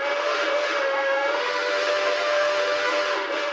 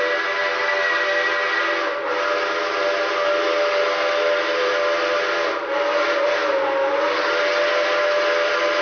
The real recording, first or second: second